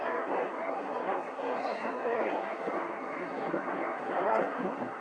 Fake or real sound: fake